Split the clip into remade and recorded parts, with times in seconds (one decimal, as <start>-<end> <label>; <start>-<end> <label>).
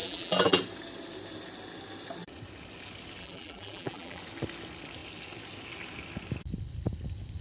0.0-0.6 remade; 0.6-3.2 recorded; 3.2-4.2 remade; 4.2-7.4 recorded